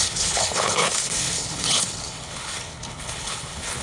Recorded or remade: remade